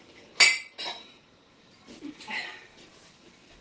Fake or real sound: real